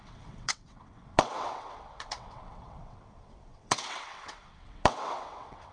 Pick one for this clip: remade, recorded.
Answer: remade